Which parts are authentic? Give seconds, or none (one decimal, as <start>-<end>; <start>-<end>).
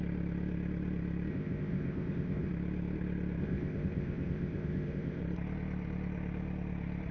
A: 0.0-1.3; 2.5-3.4; 5.2-7.1